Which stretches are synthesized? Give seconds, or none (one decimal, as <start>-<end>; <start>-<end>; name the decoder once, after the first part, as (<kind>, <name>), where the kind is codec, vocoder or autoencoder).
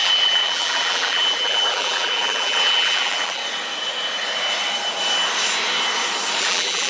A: 0.0-3.4 (vocoder, BigVGAN v2); 6.4-6.9